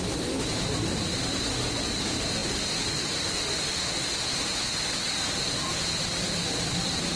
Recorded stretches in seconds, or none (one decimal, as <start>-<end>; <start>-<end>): 0.0-7.2